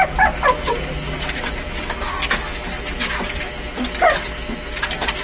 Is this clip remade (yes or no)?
no